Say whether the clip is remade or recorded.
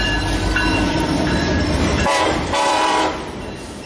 remade